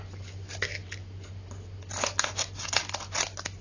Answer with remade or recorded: recorded